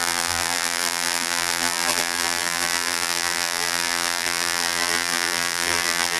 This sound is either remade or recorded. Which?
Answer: remade